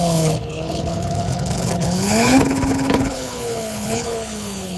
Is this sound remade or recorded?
remade